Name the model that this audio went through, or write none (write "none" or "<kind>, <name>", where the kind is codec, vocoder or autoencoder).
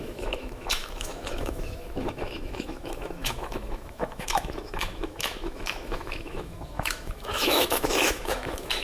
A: autoencoder, DAC-VAE